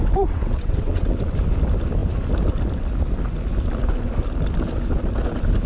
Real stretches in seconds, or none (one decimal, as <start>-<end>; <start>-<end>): 1.2-5.7